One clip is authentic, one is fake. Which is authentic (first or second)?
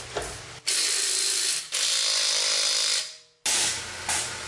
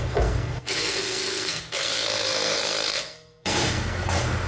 first